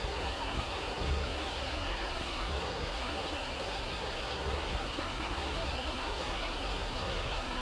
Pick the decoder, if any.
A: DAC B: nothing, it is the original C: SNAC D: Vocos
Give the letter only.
C